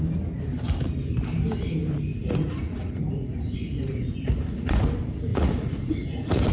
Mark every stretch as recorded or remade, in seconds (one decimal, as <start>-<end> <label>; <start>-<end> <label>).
0.0-2.1 recorded; 2.1-4.8 remade; 4.8-5.3 recorded; 5.3-6.5 remade